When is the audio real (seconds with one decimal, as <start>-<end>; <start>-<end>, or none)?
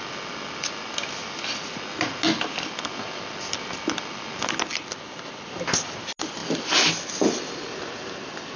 0.0-8.6